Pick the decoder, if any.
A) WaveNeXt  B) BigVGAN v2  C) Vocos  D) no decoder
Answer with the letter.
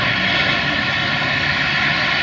D